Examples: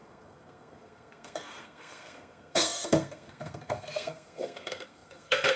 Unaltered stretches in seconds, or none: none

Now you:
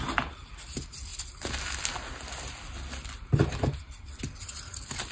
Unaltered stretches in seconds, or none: 0.0-5.1

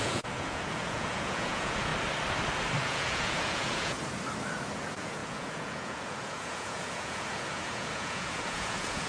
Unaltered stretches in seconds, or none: 1.9-2.8; 4.0-4.8

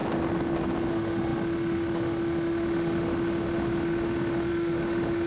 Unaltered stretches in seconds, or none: 0.0-0.9

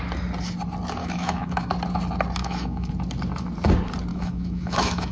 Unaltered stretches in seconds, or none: 0.0-1.0; 1.7-2.4; 2.9-4.1

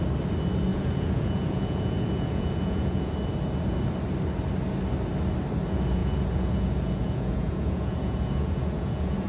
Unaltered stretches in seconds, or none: 0.0-0.7; 3.1-6.0